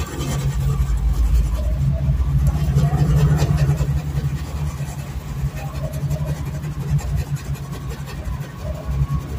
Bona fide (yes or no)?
yes